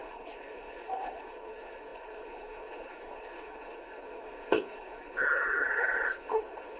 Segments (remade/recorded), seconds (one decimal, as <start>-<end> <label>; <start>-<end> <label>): 0.0-6.8 remade